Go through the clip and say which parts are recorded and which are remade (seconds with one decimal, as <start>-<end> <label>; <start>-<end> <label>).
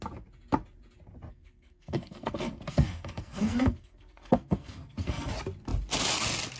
0.0-1.3 recorded; 1.3-5.3 remade; 5.3-6.6 recorded